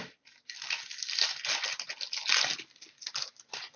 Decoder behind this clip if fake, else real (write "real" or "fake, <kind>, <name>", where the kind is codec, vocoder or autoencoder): real